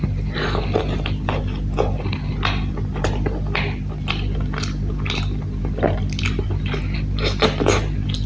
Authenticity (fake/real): real